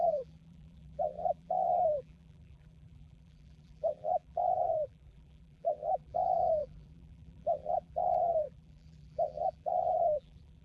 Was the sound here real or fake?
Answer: fake